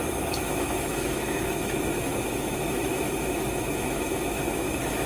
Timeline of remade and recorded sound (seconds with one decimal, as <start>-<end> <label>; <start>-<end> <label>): 0.0-5.1 remade